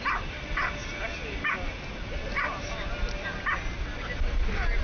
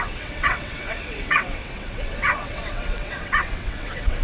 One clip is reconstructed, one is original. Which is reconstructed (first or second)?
second